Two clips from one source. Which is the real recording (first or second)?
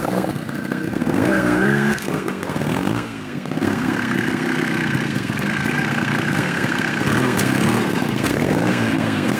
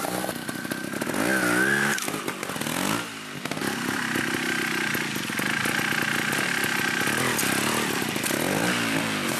second